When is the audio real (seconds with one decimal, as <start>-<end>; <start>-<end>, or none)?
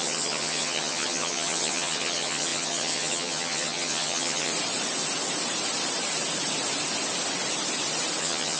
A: 4.5-8.2